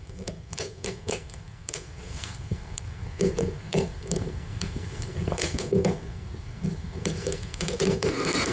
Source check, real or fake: fake